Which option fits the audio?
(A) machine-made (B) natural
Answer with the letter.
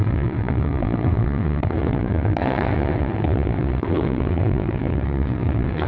A